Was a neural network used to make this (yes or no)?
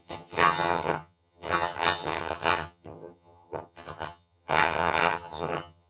yes